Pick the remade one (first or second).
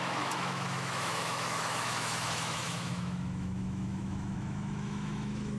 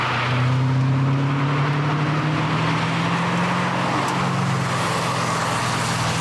first